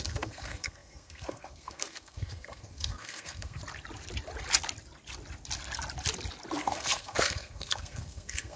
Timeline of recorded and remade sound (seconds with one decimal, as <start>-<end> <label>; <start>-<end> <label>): 0.0-3.6 remade; 3.6-6.6 recorded; 6.6-8.6 remade